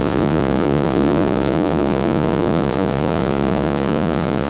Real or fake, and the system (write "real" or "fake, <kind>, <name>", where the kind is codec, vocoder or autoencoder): fake, vocoder, Vocos